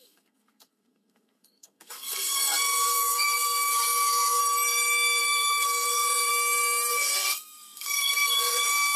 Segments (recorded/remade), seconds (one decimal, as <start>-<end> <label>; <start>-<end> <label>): 0.0-4.4 remade; 4.4-5.2 recorded; 5.2-6.3 remade; 6.3-6.9 recorded; 6.9-9.0 remade